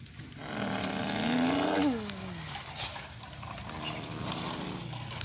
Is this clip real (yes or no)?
yes